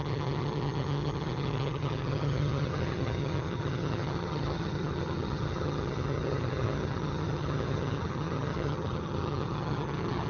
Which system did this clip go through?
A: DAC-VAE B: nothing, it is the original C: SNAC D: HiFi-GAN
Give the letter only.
D